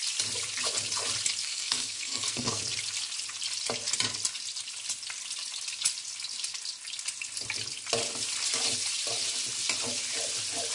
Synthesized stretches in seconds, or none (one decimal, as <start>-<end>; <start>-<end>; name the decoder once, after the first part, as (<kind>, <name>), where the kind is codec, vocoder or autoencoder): 1.4-2.6 (codec, SNAC)